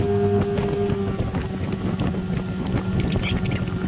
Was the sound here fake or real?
real